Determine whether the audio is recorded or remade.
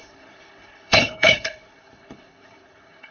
remade